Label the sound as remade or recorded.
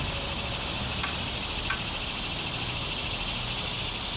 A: recorded